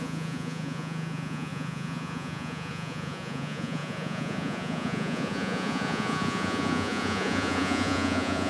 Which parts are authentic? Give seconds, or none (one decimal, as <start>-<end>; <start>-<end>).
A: none